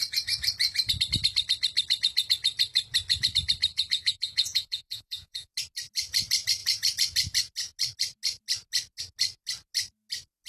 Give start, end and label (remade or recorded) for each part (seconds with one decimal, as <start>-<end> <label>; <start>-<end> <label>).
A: 0.0-3.7 recorded; 3.7-5.5 remade; 5.5-10.5 recorded